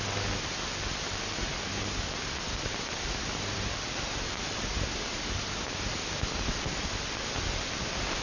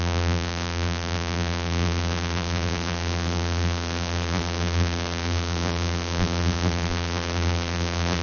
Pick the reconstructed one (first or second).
second